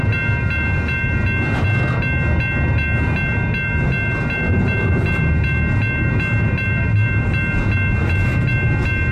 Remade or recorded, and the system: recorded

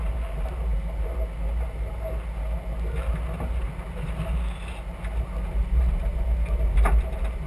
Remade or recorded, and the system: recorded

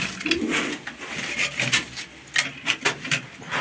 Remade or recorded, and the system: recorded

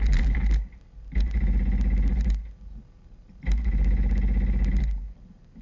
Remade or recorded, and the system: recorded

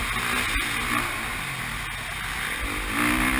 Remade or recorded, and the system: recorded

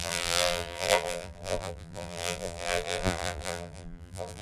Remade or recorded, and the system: remade, vocoder, BigVGAN v2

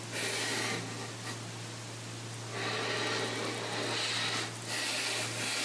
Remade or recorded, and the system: recorded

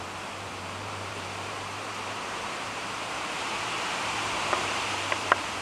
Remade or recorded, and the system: remade, vocoder, BigVGAN v2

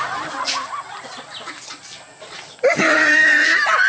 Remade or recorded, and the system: remade, vocoder, BigVGAN v2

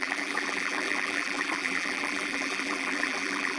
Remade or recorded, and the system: remade, vocoder, BigVGAN v2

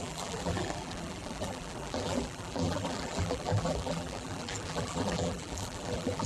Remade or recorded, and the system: remade, vocoder, BigVGAN v2